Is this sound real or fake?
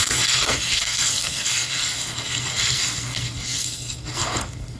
fake